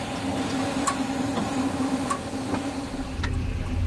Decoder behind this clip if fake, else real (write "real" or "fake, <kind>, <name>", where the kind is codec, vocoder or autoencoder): real